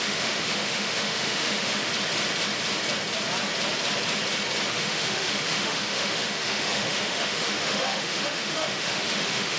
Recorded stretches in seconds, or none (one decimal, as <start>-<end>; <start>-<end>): 1.9-4.7